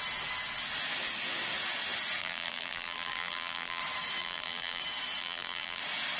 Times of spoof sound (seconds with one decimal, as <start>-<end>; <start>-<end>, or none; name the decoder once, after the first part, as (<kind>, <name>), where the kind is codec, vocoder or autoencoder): 2.2-3.8 (vocoder, BigVGAN v2); 4.2-4.8; 5.2-5.8